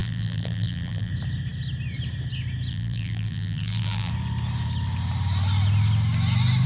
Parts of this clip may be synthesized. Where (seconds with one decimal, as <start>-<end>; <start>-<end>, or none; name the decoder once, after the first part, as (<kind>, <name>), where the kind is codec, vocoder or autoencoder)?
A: 0.0-1.1 (vocoder, BigVGAN v2); 2.7-4.1